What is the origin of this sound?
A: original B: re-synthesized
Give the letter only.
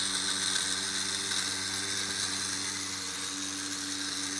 A